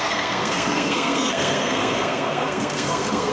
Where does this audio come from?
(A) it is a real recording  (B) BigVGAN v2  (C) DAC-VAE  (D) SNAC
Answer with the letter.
D